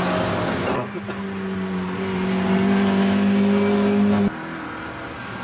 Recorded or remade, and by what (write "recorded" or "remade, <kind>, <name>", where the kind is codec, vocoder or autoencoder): recorded